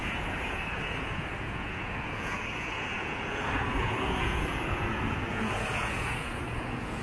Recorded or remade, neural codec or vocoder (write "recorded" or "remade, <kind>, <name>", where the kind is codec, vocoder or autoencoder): remade, vocoder, Vocos